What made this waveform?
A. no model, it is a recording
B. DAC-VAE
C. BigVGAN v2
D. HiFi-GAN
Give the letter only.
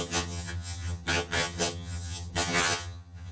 D